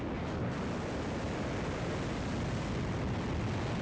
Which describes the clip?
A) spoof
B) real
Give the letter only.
B